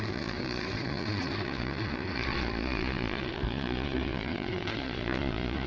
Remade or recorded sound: remade